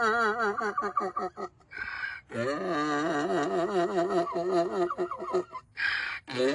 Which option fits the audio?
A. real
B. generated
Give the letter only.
A